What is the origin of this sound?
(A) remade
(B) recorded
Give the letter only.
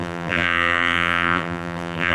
A